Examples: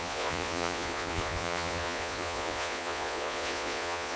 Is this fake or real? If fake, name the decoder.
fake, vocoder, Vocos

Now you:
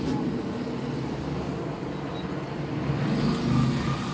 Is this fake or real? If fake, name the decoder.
real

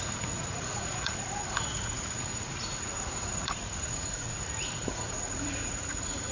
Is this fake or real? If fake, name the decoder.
fake, vocoder, Vocos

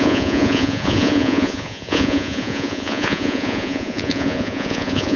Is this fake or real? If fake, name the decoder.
fake, vocoder, Vocos